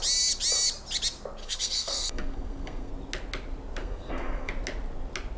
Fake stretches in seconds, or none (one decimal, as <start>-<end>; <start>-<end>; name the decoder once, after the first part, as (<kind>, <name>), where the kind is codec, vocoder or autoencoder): 1.4-2.9 (codec, SNAC); 3.8-4.5

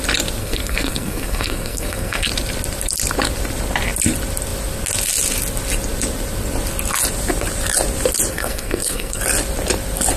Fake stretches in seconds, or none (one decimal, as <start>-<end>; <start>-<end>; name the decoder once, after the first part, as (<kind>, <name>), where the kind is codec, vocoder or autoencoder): 0.4-2.3 (codec, SNAC); 8.3-9.2

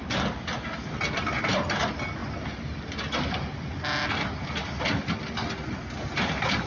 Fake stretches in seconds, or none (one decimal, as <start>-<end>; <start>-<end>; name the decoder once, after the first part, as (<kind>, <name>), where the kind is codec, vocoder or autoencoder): none